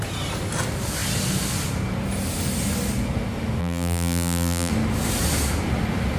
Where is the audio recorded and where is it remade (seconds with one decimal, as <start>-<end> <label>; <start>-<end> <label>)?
0.0-3.6 recorded; 3.6-4.7 remade; 4.7-6.2 recorded